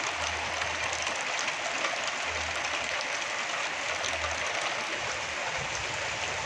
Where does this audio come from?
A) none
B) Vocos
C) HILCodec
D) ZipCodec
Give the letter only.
A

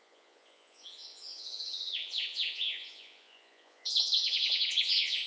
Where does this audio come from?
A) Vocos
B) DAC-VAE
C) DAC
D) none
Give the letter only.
A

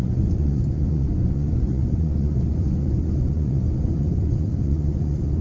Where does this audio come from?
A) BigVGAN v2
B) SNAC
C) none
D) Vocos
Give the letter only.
D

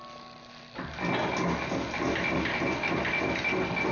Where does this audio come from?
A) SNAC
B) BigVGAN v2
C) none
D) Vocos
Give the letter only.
C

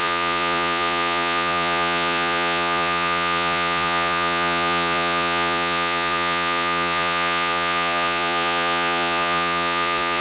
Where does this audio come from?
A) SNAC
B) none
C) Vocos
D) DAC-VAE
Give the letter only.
C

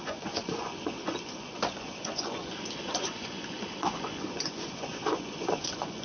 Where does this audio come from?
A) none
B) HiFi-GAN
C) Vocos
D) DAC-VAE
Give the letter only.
C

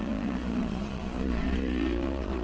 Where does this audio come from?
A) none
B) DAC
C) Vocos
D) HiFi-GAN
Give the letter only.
C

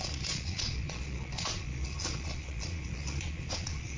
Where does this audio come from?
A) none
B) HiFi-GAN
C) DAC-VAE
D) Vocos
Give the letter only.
D